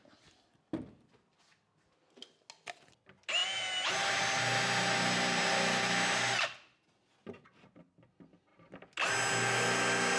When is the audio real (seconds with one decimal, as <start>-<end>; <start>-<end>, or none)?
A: 0.0-10.2